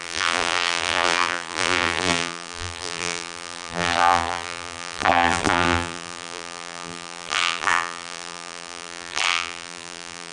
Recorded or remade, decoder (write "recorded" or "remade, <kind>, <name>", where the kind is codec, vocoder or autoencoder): remade, vocoder, BigVGAN v2